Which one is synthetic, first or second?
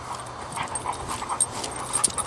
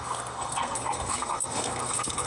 second